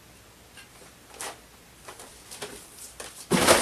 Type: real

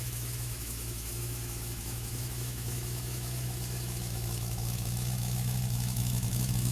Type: fake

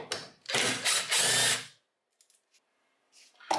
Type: real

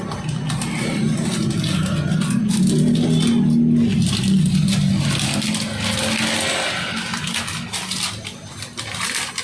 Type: real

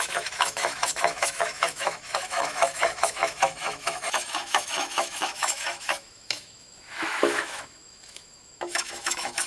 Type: fake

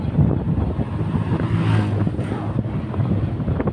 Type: real